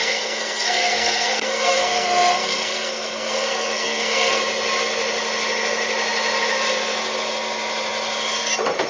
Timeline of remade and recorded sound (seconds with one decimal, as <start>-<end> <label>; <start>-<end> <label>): 0.0-4.4 remade; 4.4-8.9 recorded